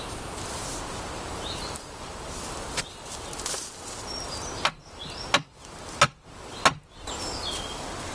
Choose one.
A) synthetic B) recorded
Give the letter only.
B